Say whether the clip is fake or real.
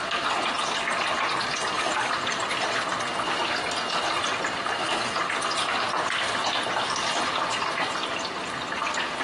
real